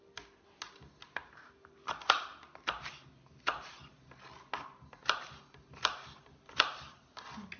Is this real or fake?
real